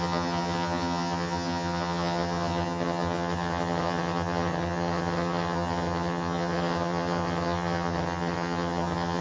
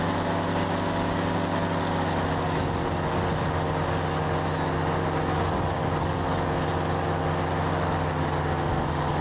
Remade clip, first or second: first